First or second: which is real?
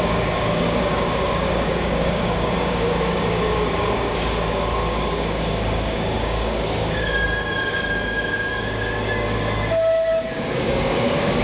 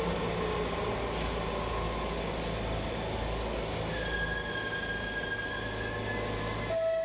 second